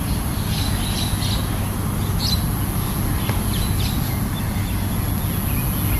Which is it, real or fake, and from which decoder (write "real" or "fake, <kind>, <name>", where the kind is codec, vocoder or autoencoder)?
real